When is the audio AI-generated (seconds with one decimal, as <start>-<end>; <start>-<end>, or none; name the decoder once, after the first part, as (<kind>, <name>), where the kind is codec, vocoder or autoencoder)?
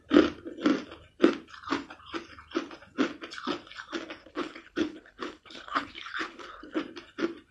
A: 4.2-6.8 (codec, HILCodec)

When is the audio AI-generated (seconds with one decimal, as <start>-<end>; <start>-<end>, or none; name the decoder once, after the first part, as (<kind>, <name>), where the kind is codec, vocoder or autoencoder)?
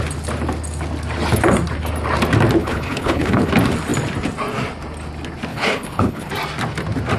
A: 2.6-3.5 (codec, HILCodec); 5.5-6.3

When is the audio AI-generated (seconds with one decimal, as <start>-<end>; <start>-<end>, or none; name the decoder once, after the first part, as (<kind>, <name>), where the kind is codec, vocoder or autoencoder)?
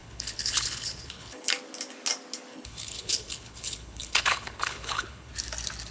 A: 0.0-1.5 (codec, HILCodec); 2.5-5.3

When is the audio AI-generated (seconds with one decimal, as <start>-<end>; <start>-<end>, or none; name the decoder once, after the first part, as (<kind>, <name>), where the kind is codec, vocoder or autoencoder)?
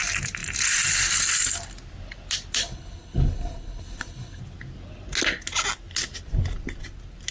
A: 2.6-4.4 (codec, HILCodec)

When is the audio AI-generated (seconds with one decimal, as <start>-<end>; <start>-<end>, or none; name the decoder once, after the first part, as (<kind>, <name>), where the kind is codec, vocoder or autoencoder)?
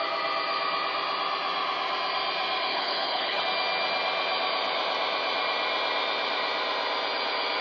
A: 2.7-3.4 (codec, HILCodec)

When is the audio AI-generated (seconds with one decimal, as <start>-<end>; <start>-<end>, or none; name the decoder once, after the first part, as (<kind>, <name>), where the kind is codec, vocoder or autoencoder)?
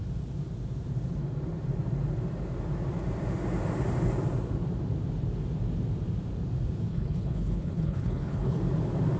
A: 6.9-8.6 (codec, HILCodec)